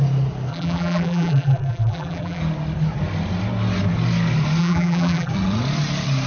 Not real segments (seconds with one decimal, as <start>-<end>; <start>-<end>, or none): 0.5-2.4; 4.6-5.3